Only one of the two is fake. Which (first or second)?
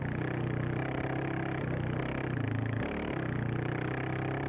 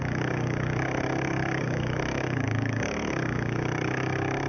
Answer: second